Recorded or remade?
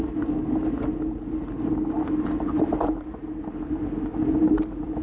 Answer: recorded